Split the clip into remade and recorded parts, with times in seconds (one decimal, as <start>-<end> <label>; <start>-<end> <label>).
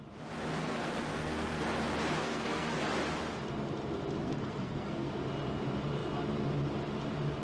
0.0-0.6 recorded; 0.6-1.6 remade; 1.6-2.2 recorded; 2.2-2.8 remade; 2.8-4.2 recorded; 4.2-5.1 remade; 5.1-7.4 recorded